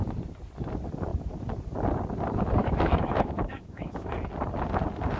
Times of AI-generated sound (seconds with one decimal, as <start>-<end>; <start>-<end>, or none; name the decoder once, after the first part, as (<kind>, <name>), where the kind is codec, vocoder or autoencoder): 2.6-4.1 (autoencoder, DAC-VAE)